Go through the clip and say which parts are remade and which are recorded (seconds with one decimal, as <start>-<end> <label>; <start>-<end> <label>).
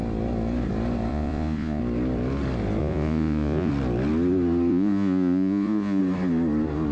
0.0-1.1 recorded; 1.1-1.8 remade; 1.8-2.8 recorded; 2.8-3.7 remade; 3.7-4.7 recorded; 4.7-6.0 remade; 6.0-6.9 recorded